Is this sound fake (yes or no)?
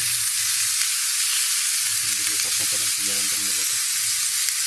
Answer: no